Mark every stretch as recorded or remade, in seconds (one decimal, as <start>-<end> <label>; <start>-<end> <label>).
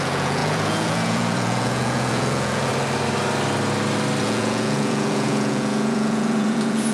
0.0-2.7 remade; 2.7-4.2 recorded; 4.2-6.9 remade